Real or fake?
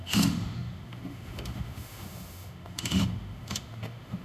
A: fake